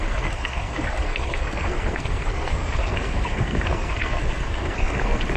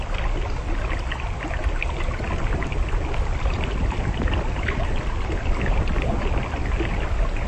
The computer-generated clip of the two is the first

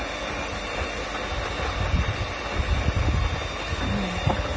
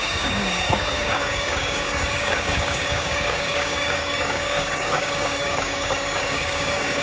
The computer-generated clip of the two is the second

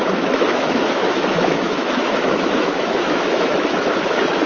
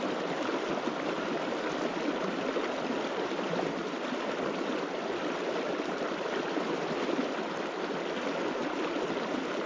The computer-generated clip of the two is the first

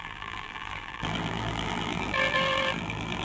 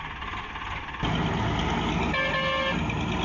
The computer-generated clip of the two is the first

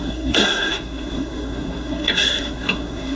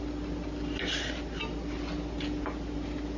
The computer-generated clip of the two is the first